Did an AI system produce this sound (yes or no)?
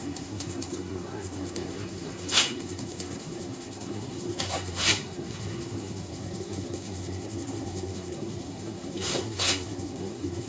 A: yes